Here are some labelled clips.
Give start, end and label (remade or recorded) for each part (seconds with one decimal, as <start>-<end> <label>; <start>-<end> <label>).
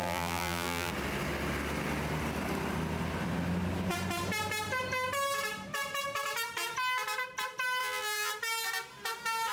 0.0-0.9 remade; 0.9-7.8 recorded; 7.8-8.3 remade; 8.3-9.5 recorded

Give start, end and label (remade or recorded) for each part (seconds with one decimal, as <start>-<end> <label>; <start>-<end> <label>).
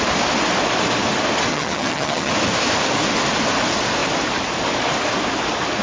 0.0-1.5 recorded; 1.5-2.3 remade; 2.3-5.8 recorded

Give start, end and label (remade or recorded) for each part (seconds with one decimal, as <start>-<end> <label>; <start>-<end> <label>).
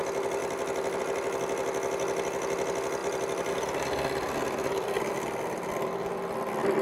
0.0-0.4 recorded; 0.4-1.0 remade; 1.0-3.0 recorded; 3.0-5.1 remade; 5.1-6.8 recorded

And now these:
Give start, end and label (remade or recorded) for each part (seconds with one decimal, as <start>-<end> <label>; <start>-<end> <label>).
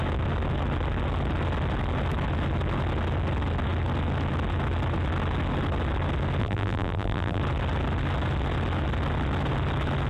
0.0-6.4 recorded; 6.4-7.4 remade; 7.4-10.1 recorded